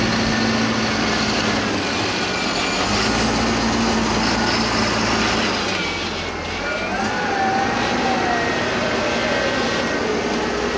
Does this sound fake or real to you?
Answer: real